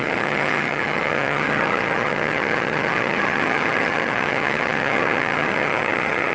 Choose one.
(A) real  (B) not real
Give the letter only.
B